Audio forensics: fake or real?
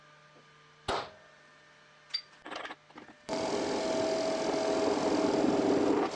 real